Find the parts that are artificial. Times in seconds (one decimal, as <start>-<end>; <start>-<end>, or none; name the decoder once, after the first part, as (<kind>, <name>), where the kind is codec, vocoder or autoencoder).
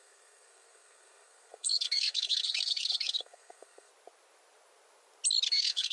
0.0-3.9 (codec, SNAC); 5.5-5.9